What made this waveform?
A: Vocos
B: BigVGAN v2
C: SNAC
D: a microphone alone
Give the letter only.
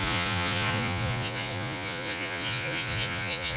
A